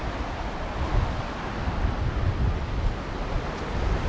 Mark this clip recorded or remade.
recorded